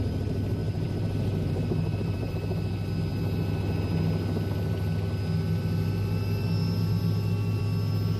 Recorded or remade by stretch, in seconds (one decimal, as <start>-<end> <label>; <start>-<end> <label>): 0.0-0.6 recorded; 0.6-2.3 remade; 2.3-8.2 recorded